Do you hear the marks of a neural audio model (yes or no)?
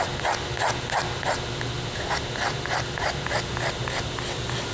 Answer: no